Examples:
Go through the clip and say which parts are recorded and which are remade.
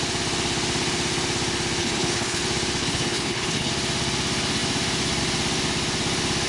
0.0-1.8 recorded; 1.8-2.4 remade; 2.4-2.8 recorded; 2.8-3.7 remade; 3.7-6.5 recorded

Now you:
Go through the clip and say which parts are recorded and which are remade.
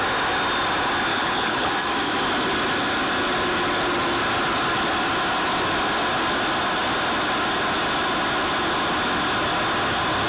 0.0-1.1 recorded; 1.1-1.7 remade; 1.7-10.3 recorded